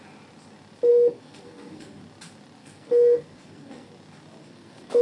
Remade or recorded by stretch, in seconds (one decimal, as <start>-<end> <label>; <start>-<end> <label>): 0.0-0.9 recorded; 0.9-2.0 remade; 2.0-2.6 recorded; 2.6-3.9 remade; 3.9-4.4 recorded; 4.4-5.0 remade